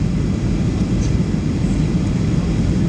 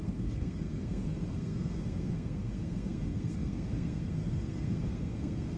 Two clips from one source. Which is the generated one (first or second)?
second